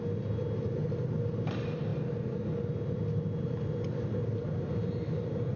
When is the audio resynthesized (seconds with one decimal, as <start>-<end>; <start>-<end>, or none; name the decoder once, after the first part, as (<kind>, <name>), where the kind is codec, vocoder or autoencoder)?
none